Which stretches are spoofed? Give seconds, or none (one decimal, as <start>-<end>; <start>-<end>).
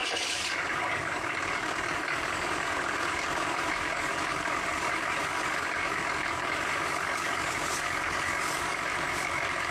0.0-9.7